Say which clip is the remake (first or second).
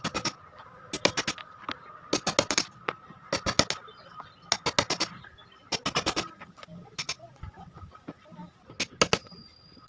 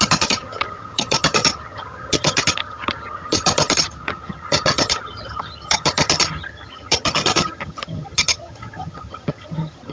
second